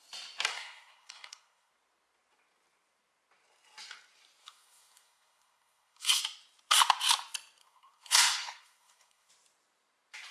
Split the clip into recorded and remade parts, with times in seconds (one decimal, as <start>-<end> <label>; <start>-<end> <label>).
0.0-0.5 recorded; 0.5-1.7 remade; 1.7-4.4 recorded; 4.4-6.2 remade; 6.2-7.6 recorded; 7.6-9.3 remade; 9.3-10.3 recorded